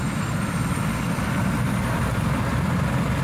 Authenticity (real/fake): real